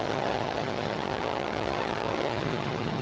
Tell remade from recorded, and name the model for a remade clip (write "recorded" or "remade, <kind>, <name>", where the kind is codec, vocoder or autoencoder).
remade, vocoder, HiFi-GAN